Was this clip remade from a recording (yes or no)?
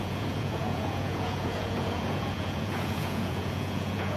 yes